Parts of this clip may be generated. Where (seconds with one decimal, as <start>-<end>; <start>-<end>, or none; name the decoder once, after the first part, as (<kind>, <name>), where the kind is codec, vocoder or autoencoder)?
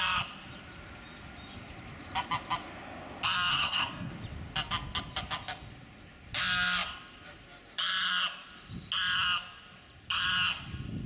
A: 3.5-4.1 (codec, SNAC)